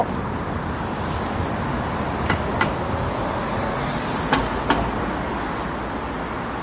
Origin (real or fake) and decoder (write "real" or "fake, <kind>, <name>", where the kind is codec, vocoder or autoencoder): real